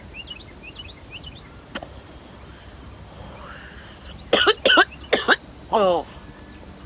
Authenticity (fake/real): real